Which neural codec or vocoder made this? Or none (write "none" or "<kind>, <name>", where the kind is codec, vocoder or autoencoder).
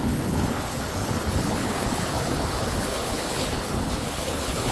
codec, HILCodec